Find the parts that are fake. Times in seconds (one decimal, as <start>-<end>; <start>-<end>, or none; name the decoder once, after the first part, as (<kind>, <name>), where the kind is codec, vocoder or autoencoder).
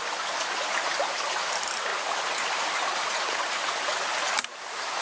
none